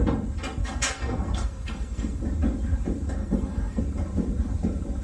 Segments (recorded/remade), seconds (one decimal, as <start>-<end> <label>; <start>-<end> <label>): 0.0-0.6 recorded; 0.6-2.2 remade; 2.2-3.2 recorded; 3.2-3.8 remade; 3.8-5.0 recorded